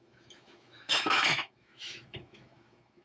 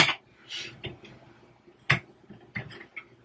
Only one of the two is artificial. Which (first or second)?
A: first